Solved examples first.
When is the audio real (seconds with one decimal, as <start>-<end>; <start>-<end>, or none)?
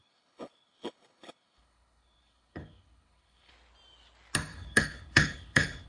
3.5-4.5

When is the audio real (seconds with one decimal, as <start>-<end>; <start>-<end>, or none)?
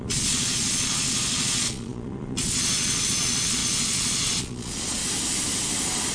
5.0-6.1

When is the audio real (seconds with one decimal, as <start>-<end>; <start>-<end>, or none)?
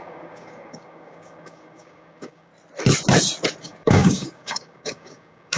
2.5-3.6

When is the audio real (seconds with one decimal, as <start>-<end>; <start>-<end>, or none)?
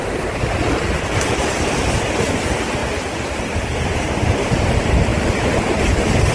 0.0-2.8; 4.6-6.3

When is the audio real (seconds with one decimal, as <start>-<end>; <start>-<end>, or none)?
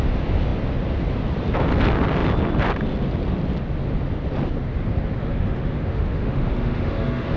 0.0-5.2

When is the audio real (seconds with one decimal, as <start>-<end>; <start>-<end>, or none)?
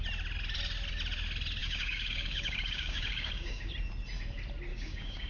0.0-1.6; 3.7-4.7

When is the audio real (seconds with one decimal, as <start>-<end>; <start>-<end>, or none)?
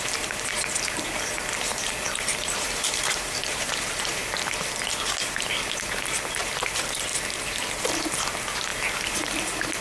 4.2-6.5; 7.1-7.8; 8.7-9.8